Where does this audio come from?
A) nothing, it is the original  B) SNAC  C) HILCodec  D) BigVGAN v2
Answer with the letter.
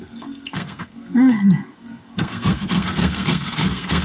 B